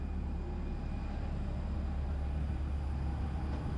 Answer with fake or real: real